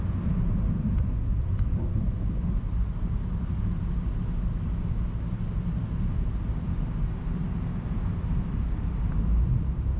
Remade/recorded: recorded